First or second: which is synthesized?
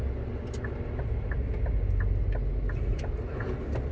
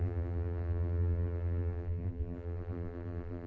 second